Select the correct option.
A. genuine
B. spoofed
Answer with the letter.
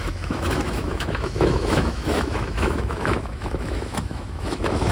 B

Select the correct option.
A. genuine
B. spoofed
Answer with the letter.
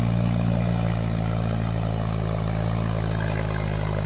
A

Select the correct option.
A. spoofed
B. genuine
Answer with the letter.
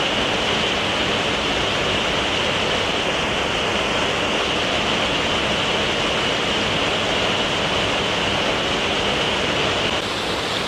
B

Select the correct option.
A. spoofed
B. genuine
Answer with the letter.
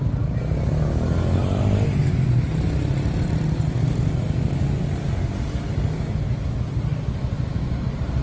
B